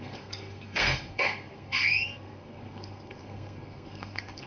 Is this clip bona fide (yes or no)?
no